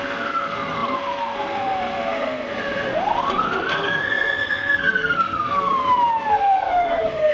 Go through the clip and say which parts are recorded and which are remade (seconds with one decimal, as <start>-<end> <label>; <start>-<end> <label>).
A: 0.0-5.7 remade; 5.7-6.3 recorded; 6.3-7.3 remade